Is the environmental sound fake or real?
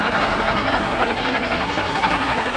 fake